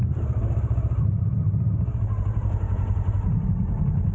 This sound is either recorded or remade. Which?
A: recorded